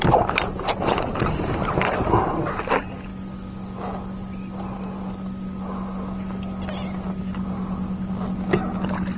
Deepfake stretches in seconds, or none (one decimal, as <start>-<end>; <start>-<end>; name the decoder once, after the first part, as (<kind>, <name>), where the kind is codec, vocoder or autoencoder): none